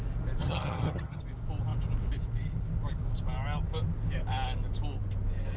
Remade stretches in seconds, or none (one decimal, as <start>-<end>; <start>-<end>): 0.4-1.2